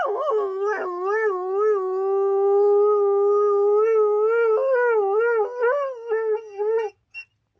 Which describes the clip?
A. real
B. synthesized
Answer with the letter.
A